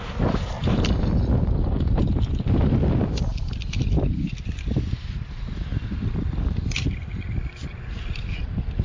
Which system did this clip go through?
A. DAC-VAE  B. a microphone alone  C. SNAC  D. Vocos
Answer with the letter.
B